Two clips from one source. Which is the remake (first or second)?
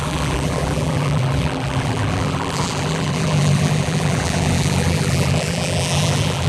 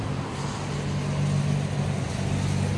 first